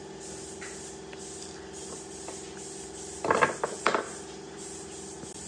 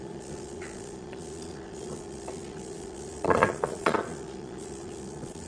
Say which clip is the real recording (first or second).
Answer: first